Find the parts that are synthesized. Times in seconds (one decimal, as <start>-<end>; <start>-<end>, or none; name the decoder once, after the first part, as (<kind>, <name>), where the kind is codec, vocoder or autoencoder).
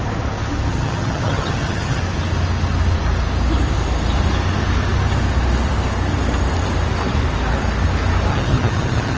0.7-2.0 (vocoder, HiFi-GAN); 8.3-9.2